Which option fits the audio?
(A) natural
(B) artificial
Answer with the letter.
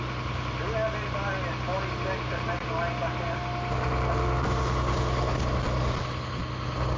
A